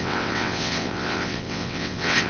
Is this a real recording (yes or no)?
no